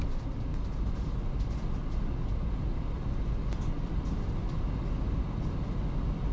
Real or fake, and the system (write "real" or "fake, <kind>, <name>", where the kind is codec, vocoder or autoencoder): real